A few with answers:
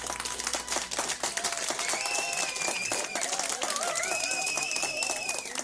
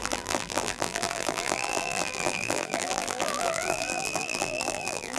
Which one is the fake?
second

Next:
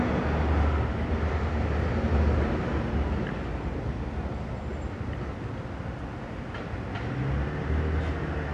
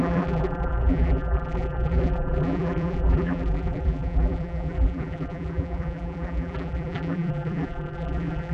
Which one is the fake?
second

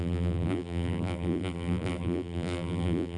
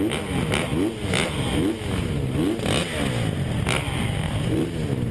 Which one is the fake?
first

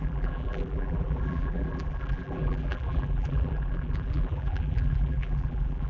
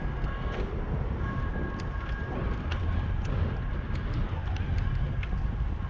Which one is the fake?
first